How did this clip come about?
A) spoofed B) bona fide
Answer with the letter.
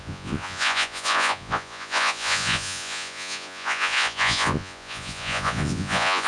A